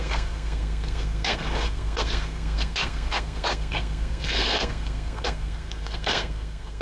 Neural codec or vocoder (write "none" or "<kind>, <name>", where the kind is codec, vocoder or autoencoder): codec, SNAC